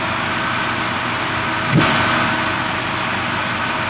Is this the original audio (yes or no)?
yes